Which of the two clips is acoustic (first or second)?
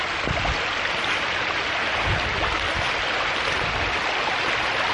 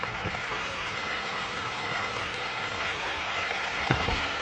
first